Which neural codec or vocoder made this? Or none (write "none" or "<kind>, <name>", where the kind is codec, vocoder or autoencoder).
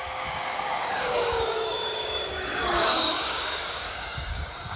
codec, DAC